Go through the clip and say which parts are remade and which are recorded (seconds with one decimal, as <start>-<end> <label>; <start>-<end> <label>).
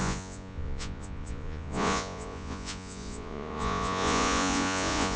0.0-5.2 remade